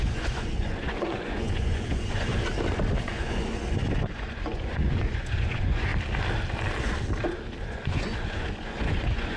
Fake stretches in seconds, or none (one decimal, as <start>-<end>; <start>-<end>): 0.0-2.3; 3.0-5.9; 7.6-9.4